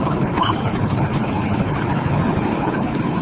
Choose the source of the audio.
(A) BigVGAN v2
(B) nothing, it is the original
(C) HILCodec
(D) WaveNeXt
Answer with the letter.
C